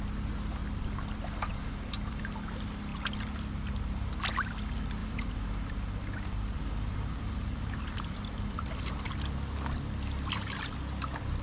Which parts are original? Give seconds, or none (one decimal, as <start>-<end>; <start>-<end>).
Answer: 0.0-0.6; 2.2-5.0; 8.9-11.4